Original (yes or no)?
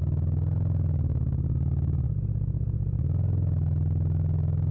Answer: yes